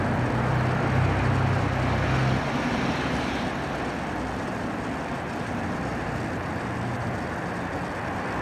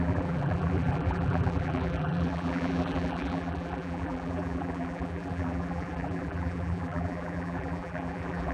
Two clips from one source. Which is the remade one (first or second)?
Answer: second